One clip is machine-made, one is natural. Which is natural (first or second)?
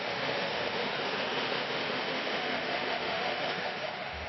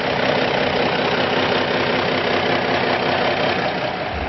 second